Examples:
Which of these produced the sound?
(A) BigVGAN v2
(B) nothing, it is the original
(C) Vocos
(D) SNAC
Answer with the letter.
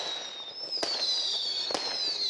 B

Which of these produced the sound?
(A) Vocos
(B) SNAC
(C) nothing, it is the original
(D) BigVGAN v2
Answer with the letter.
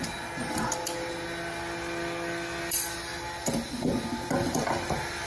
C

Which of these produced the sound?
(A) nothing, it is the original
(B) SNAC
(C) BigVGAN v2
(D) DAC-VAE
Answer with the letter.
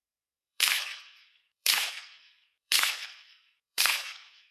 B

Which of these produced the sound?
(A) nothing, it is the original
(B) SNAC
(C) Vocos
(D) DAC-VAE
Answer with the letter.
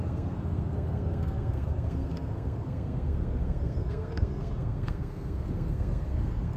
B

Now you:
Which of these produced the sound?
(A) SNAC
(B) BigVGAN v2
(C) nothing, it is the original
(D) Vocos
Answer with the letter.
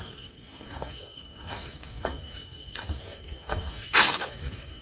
A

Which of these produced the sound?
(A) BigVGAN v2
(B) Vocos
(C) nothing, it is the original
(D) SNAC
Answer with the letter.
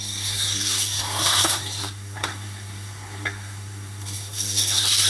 D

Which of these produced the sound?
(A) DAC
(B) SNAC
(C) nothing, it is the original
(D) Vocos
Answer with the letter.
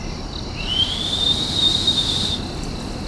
C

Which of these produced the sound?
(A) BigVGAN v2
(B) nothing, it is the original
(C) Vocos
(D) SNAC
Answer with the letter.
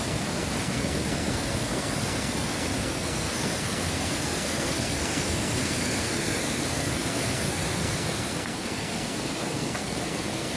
D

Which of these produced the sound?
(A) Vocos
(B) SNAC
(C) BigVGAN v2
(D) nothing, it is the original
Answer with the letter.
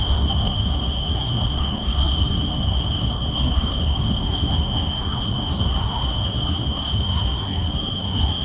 B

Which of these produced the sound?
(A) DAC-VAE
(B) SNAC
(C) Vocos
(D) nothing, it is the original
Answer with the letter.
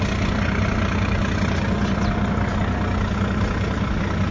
D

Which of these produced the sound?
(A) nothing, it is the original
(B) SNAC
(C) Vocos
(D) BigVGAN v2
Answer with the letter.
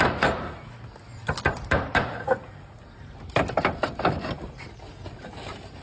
A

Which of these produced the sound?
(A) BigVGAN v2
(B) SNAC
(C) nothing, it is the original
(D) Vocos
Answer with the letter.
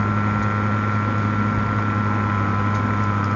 C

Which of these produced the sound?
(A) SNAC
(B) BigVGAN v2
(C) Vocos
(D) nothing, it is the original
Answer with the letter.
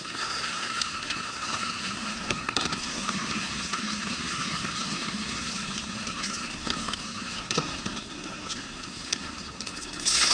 A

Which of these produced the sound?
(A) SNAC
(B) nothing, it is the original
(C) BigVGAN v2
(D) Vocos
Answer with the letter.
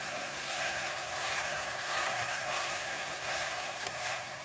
A